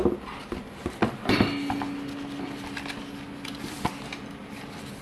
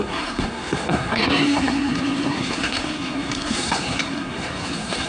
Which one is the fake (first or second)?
second